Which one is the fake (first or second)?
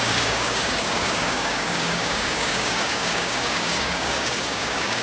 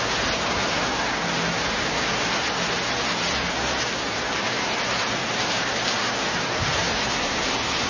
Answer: first